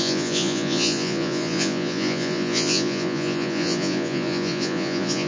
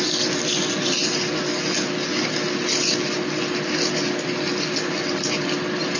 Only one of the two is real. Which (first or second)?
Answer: second